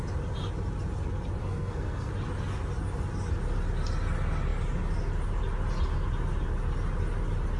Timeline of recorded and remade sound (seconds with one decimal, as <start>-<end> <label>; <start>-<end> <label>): 0.0-1.4 recorded; 1.4-2.1 remade; 2.1-7.6 recorded